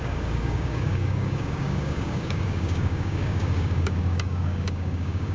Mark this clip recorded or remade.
remade